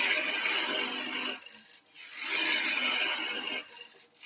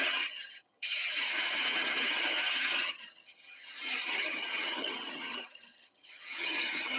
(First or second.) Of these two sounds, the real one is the first